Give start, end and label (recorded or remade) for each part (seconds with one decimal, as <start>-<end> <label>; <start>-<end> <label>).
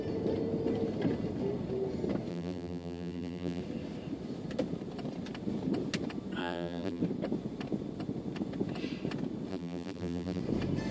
0.0-2.3 recorded; 2.3-3.6 remade; 3.6-6.4 recorded; 6.4-7.0 remade; 7.0-9.5 recorded; 9.5-10.4 remade; 10.4-10.9 recorded